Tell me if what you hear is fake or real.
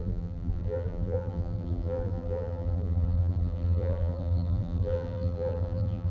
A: fake